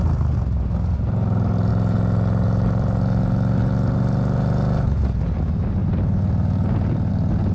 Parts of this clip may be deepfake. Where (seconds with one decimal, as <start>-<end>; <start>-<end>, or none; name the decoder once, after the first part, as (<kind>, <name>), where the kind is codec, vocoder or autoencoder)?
none